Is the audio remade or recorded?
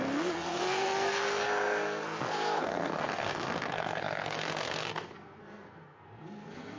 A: remade